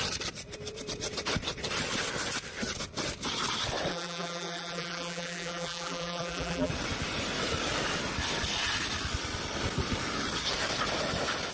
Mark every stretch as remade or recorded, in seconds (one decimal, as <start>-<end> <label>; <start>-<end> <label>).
0.0-3.9 recorded; 3.9-6.7 remade; 6.7-11.5 recorded

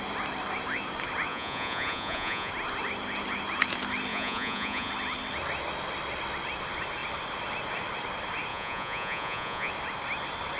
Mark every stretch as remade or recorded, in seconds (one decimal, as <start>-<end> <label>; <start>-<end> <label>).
0.0-1.3 recorded; 1.3-2.5 remade; 2.5-4.1 recorded; 4.1-4.9 remade; 4.9-8.5 recorded; 8.5-9.7 remade; 9.7-10.6 recorded

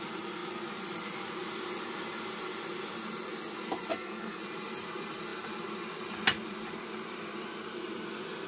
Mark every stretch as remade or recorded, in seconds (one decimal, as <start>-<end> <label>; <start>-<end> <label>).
0.0-3.9 recorded; 3.9-4.4 remade; 4.4-8.5 recorded

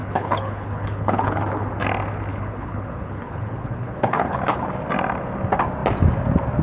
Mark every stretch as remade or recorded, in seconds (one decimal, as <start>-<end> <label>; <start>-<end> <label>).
0.0-1.7 remade; 1.7-2.3 recorded; 2.3-4.7 remade; 4.7-6.6 recorded